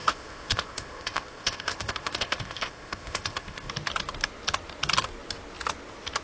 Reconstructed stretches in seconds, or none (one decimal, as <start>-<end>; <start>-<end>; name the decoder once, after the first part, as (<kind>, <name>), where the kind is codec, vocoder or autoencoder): 0.0-3.7 (codec, ZipCodec)